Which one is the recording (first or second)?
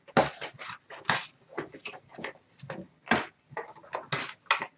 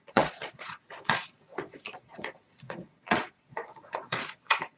first